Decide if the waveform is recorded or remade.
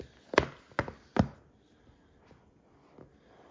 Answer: recorded